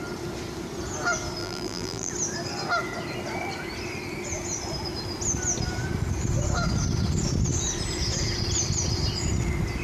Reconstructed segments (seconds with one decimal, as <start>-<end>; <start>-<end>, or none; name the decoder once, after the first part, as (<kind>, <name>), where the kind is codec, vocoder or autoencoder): 1.4-2.1 (vocoder, BigVGAN v2)